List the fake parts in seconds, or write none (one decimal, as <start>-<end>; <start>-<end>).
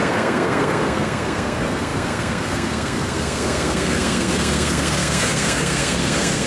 0.0-6.5